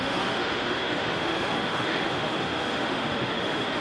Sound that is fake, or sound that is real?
fake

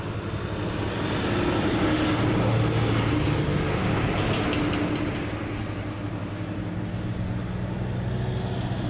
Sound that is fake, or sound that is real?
real